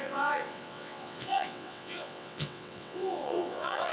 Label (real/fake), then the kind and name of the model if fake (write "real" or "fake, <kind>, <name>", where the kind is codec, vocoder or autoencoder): fake, vocoder, WaveNeXt